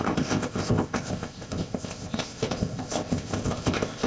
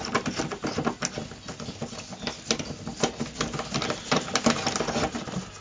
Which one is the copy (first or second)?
first